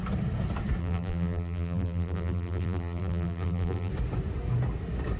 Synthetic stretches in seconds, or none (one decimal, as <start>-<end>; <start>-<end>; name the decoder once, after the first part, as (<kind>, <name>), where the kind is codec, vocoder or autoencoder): 0.8-3.9 (vocoder, BigVGAN v2)